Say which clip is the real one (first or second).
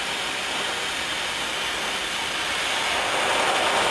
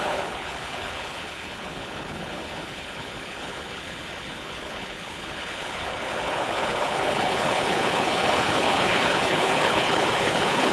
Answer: first